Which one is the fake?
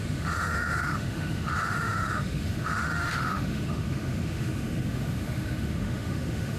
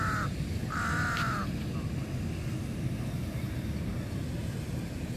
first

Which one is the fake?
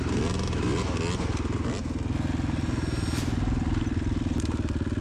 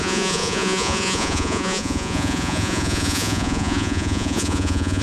second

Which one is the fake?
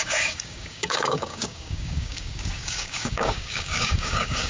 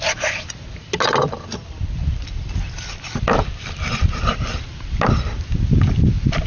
first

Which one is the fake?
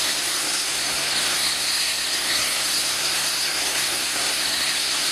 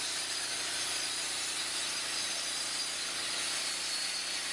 first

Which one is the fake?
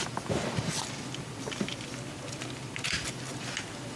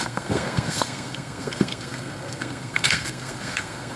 second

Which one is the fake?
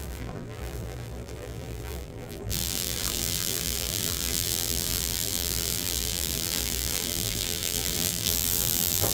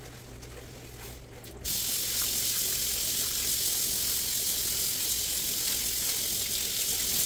first